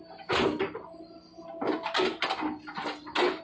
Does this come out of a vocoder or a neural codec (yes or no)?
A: no